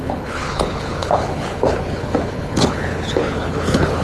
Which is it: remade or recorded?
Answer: remade